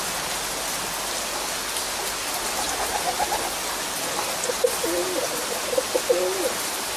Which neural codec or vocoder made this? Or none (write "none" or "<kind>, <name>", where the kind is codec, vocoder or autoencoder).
none